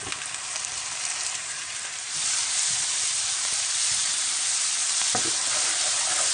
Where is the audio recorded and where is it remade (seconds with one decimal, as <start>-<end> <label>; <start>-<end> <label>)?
0.0-0.9 recorded; 0.9-4.3 remade; 4.3-6.3 recorded